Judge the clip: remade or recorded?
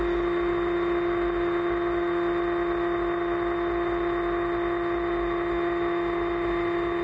recorded